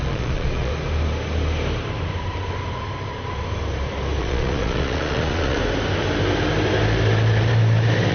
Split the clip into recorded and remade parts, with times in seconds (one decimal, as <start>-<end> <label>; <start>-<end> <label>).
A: 0.0-0.7 remade; 0.7-4.2 recorded; 4.2-5.6 remade; 5.6-8.1 recorded